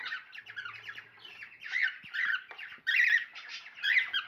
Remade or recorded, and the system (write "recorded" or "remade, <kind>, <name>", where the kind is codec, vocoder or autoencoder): remade, vocoder, BigVGAN v2